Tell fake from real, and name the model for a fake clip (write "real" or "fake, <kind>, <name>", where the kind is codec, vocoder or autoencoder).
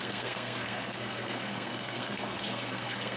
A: fake, codec, SNAC